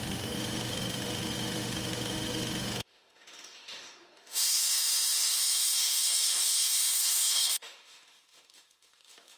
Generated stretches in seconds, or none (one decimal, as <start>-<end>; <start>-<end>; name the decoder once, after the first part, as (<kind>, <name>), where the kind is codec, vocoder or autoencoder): 0.0-9.4 (autoencoder, DAC-VAE)